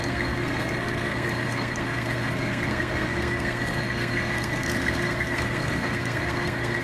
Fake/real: fake